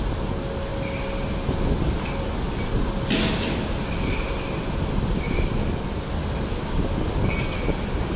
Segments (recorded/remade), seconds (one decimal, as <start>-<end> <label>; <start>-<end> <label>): 0.0-8.2 recorded